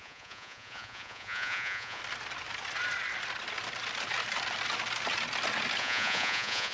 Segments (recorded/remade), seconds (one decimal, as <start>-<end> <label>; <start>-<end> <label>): 0.0-2.0 remade; 2.0-5.8 recorded; 5.8-6.7 remade

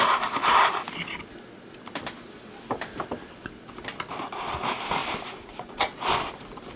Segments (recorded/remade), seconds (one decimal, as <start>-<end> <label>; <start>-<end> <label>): 0.0-5.0 recorded; 5.0-5.7 remade; 5.7-6.8 recorded